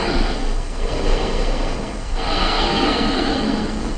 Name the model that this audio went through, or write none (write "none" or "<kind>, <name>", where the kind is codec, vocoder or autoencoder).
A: codec, SNAC